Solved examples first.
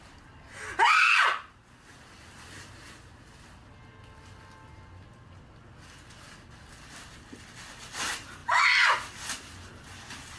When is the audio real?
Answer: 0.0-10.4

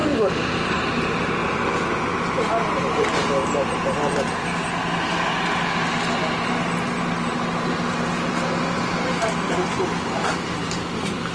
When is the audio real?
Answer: 0.6-1.4; 5.3-6.2; 9.8-11.3